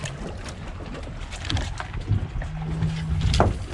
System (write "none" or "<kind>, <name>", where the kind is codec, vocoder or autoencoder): none